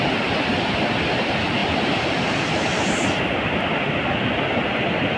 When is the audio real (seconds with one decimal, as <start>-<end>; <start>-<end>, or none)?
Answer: 0.0-5.2